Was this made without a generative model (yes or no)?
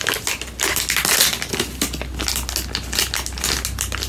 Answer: yes